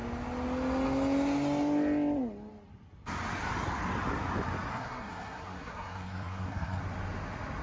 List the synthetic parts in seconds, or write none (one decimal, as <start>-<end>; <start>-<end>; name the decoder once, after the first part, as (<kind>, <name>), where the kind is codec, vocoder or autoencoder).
4.7-6.8 (codec, SNAC)

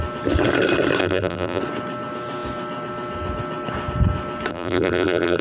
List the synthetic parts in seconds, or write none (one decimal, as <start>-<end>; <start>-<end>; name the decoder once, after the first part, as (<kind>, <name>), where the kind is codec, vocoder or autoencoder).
1.0-1.6 (vocoder, BigVGAN v2); 4.5-5.4

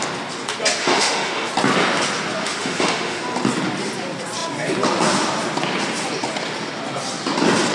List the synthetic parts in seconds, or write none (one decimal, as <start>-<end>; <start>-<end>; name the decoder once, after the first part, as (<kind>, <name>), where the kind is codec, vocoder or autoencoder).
0.8-1.5 (autoencoder, DAC-VAE); 2.4-3.2